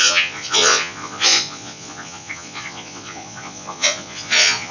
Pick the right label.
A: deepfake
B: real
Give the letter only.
A